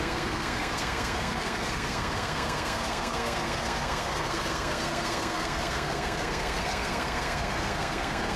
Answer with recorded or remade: remade